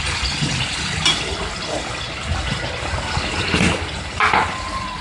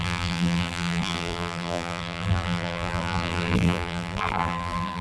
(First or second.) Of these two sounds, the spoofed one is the second